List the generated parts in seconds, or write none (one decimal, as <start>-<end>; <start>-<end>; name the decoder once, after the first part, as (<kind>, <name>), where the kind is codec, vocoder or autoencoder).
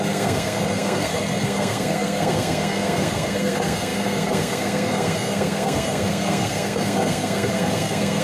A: 0.0-8.2 (codec, SNAC)